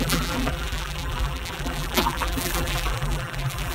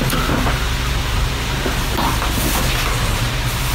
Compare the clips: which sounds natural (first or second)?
second